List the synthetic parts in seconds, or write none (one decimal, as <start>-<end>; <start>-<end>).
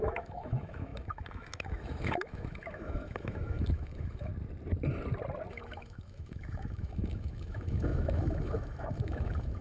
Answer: 0.0-4.3; 5.5-9.6